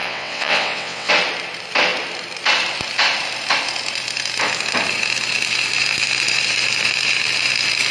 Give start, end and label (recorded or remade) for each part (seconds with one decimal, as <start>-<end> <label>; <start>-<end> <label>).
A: 0.0-1.1 remade; 1.1-7.9 recorded